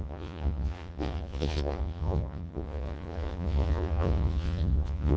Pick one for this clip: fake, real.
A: fake